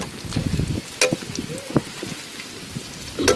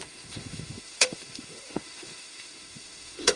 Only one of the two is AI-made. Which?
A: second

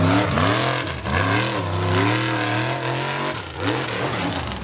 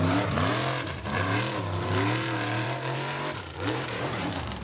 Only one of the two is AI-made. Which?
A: second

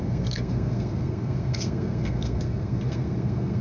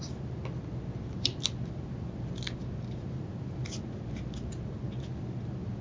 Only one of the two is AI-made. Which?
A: first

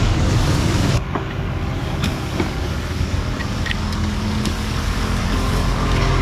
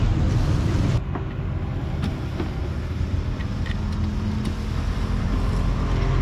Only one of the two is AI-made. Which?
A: first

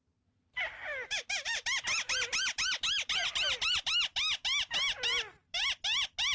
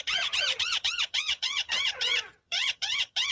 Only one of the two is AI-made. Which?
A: second